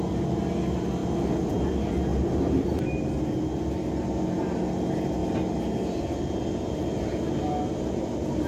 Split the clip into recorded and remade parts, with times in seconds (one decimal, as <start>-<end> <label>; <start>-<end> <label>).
0.0-8.5 recorded